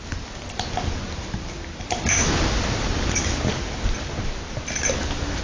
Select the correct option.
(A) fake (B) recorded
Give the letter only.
B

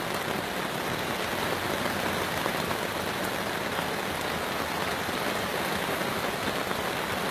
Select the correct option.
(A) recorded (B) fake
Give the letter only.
A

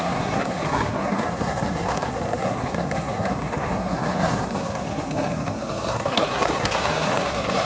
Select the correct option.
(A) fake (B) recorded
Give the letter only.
A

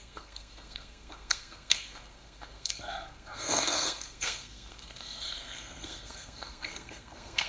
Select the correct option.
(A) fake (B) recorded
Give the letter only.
A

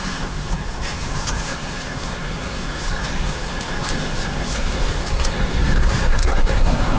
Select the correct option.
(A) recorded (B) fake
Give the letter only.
B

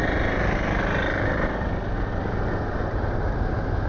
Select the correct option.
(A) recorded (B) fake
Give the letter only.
A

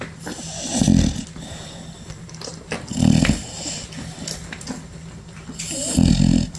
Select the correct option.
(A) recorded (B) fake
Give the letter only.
A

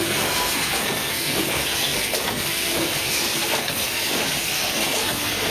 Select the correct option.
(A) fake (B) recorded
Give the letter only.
A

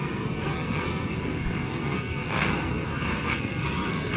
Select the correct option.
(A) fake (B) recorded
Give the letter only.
A